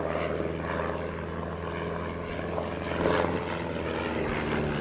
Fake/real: real